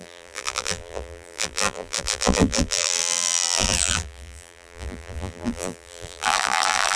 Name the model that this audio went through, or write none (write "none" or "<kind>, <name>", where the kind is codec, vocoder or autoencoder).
vocoder, BigVGAN v2